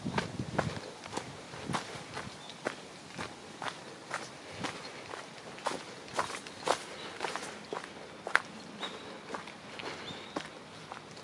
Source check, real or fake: real